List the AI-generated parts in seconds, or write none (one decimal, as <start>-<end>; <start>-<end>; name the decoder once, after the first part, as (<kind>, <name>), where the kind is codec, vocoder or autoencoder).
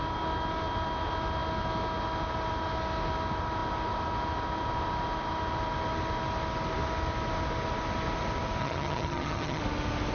8.6-9.6 (vocoder, HiFi-GAN)